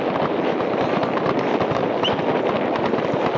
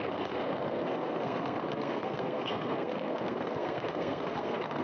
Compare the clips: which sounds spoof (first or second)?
second